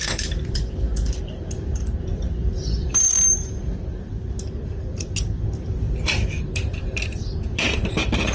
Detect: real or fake fake